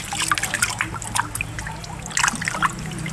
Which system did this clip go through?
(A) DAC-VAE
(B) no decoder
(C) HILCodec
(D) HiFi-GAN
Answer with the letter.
B